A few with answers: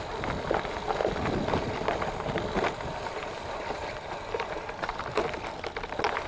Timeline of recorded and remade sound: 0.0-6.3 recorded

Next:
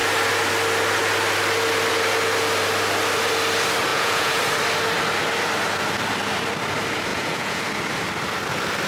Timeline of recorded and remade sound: 0.0-3.9 recorded; 3.9-4.4 remade; 4.4-7.1 recorded; 7.1-7.6 remade; 7.6-8.9 recorded

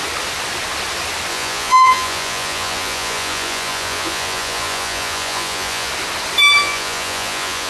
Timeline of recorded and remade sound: 0.0-1.3 recorded; 1.3-5.9 remade; 5.9-6.6 recorded; 6.6-7.7 remade

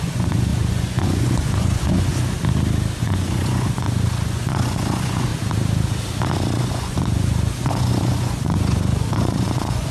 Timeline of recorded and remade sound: 0.0-2.1 remade; 2.1-3.0 recorded; 3.0-5.3 remade; 5.3-6.6 recorded; 6.6-9.9 remade

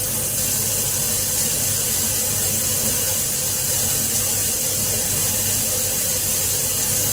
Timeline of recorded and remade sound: 0.0-7.1 recorded

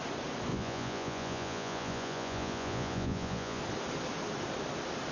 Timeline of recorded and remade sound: 0.0-0.5 recorded; 0.5-3.6 remade; 3.6-5.1 recorded

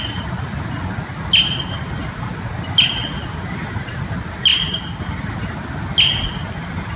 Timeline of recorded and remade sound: 0.0-7.0 recorded

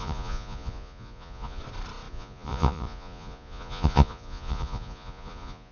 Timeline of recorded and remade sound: 0.0-1.6 remade; 1.6-2.1 recorded; 2.1-5.7 remade